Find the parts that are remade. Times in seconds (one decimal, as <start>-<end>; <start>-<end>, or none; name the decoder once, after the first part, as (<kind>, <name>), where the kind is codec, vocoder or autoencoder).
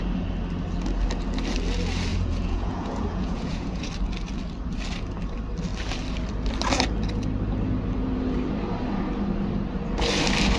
2.1-3.9 (vocoder, Vocos)